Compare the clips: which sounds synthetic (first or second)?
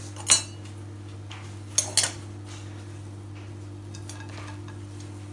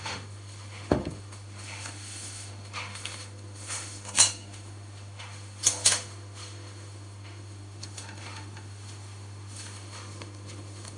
second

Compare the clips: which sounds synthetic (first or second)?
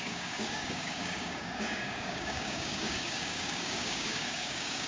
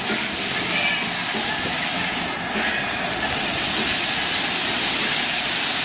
first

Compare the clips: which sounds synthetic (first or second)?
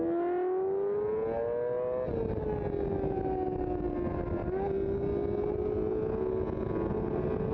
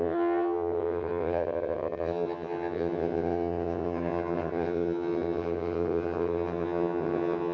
second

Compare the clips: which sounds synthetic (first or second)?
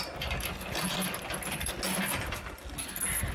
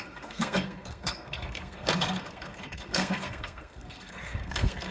second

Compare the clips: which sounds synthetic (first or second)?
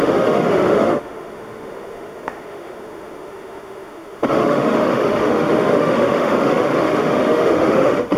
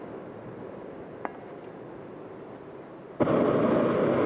first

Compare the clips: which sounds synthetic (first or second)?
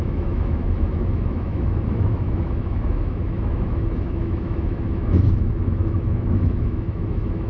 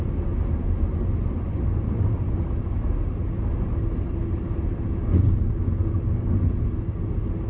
first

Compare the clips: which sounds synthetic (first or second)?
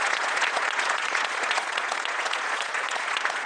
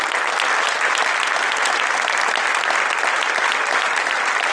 first